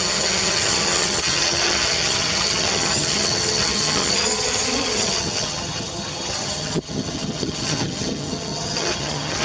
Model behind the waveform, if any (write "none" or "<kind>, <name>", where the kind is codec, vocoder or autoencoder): vocoder, HiFi-GAN